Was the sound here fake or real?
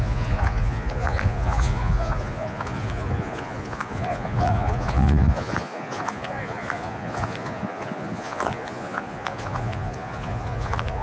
fake